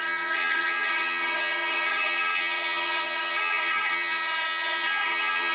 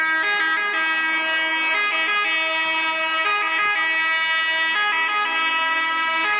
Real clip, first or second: second